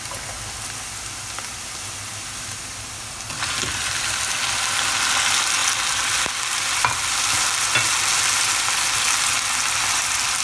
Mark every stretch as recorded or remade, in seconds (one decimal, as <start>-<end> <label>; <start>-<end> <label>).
0.0-10.4 recorded